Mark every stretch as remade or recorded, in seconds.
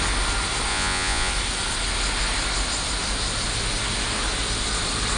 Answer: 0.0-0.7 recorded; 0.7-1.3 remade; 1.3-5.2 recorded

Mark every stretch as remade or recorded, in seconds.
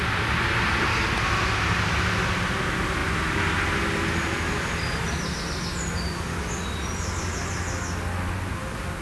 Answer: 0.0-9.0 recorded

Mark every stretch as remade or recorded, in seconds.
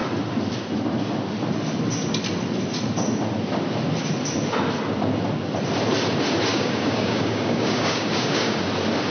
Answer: 0.0-6.5 recorded; 6.5-8.6 remade; 8.6-9.1 recorded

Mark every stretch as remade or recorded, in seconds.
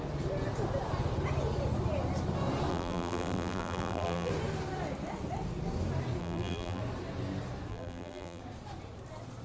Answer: 0.0-2.7 recorded; 2.7-4.3 remade; 4.3-6.2 recorded; 6.2-6.8 remade; 6.8-7.7 recorded; 7.7-8.4 remade; 8.4-9.4 recorded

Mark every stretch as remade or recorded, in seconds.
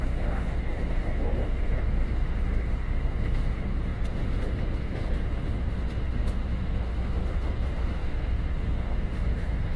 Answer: 0.0-9.8 remade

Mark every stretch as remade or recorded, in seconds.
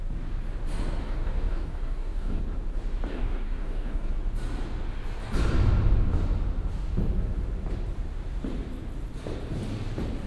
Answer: 0.0-1.0 recorded; 1.0-2.4 remade; 2.4-3.1 recorded; 3.1-4.1 remade; 4.1-10.3 recorded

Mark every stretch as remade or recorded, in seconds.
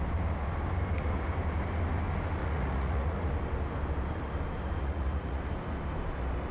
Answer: 0.0-2.4 recorded; 2.4-3.3 remade; 3.3-4.8 recorded; 4.8-5.4 remade; 5.4-6.5 recorded